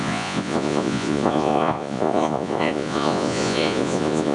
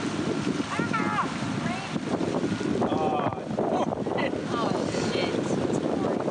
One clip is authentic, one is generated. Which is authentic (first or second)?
second